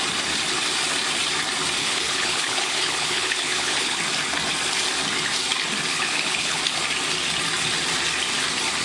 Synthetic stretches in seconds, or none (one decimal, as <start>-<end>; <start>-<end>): 1.8-4.0; 5.9-6.6